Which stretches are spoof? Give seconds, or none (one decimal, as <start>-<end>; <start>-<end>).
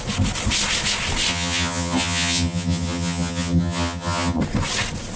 1.3-4.4